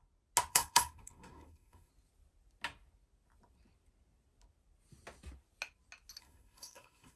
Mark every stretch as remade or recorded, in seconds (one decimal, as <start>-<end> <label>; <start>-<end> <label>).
0.0-0.5 recorded; 0.5-1.9 remade; 1.9-6.2 recorded; 6.2-7.2 remade